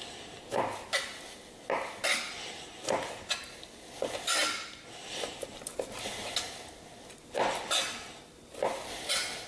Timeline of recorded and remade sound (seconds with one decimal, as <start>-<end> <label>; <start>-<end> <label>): 0.0-9.5 recorded